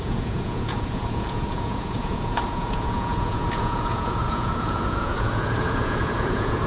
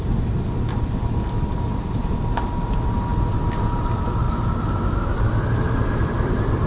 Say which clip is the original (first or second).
second